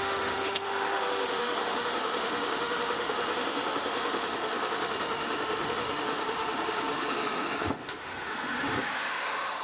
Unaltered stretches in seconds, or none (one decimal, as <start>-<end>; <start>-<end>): none